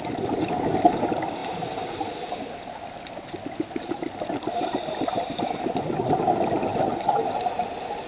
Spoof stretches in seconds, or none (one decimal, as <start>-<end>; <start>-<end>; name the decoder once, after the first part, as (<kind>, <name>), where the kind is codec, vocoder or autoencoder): none